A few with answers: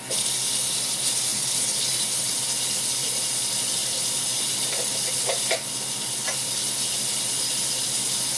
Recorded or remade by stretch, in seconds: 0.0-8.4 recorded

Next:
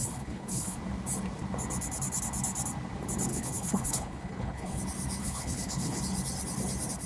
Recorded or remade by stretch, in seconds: 0.0-0.8 remade; 0.8-3.3 recorded; 3.3-4.8 remade; 4.8-5.2 recorded; 5.2-6.0 remade; 6.0-7.1 recorded

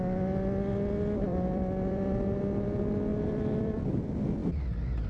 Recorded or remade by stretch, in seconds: 0.0-1.3 recorded; 1.3-2.4 remade; 2.4-3.1 recorded; 3.1-4.0 remade; 4.0-5.1 recorded

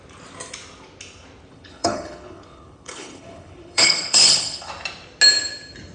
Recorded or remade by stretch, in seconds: 0.0-1.5 recorded; 1.5-4.7 remade; 4.7-5.9 recorded

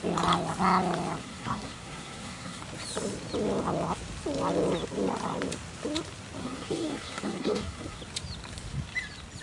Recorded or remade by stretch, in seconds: 0.0-1.2 recorded; 1.2-2.6 remade; 2.6-6.4 recorded; 6.4-8.0 remade; 8.0-9.4 recorded

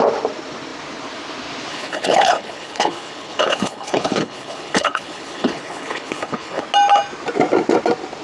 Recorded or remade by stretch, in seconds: 0.0-1.7 recorded; 1.7-6.6 remade; 6.6-8.2 recorded